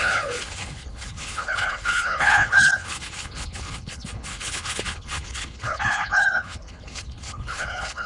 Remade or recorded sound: remade